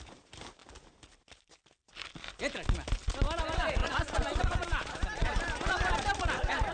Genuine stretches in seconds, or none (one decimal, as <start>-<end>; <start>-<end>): 0.6-3.4